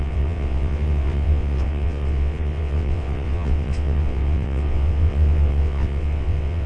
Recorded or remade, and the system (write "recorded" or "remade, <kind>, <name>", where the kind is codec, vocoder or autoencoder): remade, vocoder, WaveNeXt